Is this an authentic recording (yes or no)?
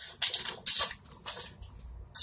yes